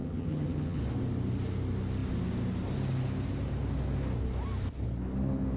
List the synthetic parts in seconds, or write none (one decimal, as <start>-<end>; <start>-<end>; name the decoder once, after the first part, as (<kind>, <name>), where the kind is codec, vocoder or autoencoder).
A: 0.0-0.8 (vocoder, HiFi-GAN)